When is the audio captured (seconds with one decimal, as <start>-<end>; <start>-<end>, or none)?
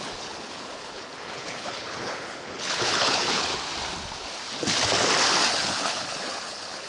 3.5-5.5